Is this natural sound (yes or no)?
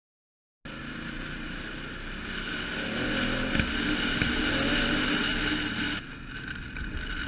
yes